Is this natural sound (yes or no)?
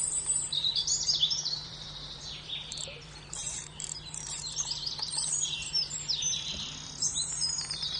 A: no